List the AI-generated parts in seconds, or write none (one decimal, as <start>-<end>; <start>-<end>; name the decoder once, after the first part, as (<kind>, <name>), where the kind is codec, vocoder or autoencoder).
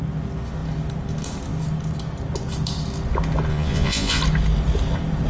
3.5-4.2 (vocoder, Vocos)